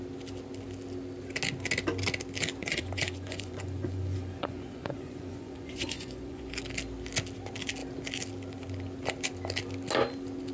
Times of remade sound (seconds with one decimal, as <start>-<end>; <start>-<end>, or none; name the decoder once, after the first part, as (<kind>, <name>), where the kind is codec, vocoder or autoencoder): 2.6-6.6 (vocoder, Vocos)